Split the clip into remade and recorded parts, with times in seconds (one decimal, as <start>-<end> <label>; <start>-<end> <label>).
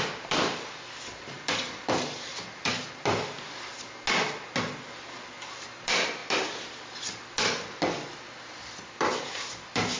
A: 0.0-3.7 remade; 3.7-5.8 recorded; 5.8-10.0 remade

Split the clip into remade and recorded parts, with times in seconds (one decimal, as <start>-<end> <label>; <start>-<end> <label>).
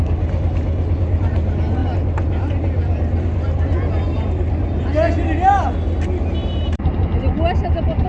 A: 0.0-6.4 recorded; 6.4-7.2 remade; 7.2-8.1 recorded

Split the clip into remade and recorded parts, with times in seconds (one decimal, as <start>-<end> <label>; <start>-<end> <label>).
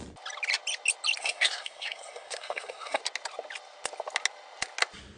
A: 0.0-1.2 recorded; 1.2-3.0 remade; 3.0-5.2 recorded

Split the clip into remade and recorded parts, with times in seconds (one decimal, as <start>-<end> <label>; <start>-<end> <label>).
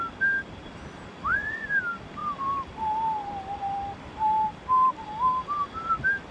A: 0.0-1.3 recorded; 1.3-1.8 remade; 1.8-6.3 recorded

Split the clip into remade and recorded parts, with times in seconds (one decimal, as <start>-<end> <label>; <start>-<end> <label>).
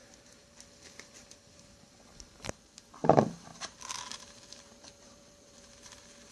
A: 0.0-2.8 remade; 2.8-3.5 recorded; 3.5-6.3 remade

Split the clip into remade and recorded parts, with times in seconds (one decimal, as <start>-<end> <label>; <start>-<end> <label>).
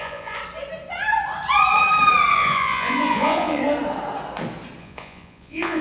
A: 0.0-0.4 remade; 0.4-2.3 recorded; 2.3-3.6 remade; 3.6-4.8 recorded; 4.8-5.8 remade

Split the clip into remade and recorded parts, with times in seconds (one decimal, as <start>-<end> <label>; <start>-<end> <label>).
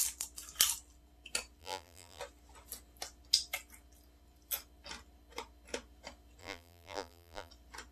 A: 0.0-1.6 recorded; 1.6-2.2 remade; 2.2-6.4 recorded; 6.4-7.5 remade; 7.5-7.9 recorded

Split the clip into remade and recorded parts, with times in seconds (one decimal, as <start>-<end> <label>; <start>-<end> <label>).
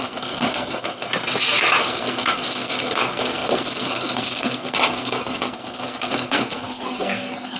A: 0.0-1.1 remade; 1.1-1.8 recorded; 1.8-7.6 remade